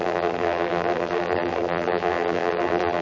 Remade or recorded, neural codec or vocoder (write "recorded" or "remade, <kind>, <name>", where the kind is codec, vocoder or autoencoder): remade, vocoder, BigVGAN v2